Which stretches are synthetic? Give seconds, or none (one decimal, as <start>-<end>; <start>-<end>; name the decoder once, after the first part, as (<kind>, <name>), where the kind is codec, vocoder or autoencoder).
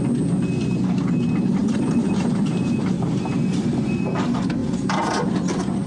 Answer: 1.6-3.2 (vocoder, BigVGAN v2); 4.6-5.3